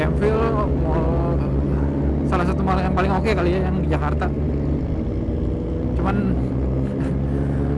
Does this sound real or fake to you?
real